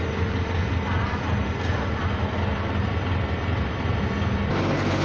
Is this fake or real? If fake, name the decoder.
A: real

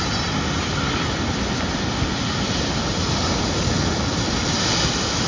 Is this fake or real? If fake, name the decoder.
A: real